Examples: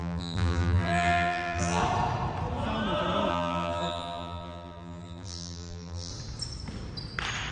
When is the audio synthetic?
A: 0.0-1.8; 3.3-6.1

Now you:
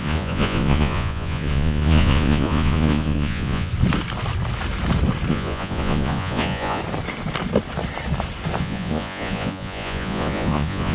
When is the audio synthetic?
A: 0.0-3.7; 5.3-6.8; 8.6-10.9

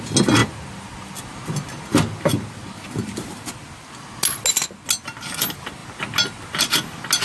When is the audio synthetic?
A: none